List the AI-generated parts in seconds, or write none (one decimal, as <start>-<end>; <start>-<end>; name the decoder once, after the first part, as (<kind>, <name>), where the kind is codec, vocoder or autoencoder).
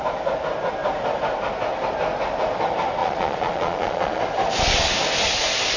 3.0-4.2 (vocoder, Vocos)